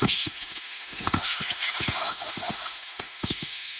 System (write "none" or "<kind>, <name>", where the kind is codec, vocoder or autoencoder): autoencoder, DAC-VAE